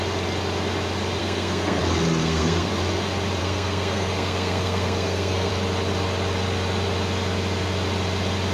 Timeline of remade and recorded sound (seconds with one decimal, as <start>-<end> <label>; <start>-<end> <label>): 0.0-1.2 recorded; 1.2-1.8 remade; 1.8-2.2 recorded; 2.2-2.7 remade; 2.7-3.4 recorded; 3.4-5.5 remade; 5.5-8.5 recorded